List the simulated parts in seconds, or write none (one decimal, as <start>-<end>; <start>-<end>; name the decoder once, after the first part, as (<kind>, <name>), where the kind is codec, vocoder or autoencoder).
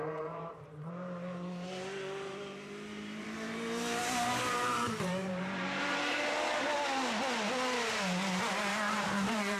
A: 0.0-6.7 (vocoder, BigVGAN v2); 8.5-9.6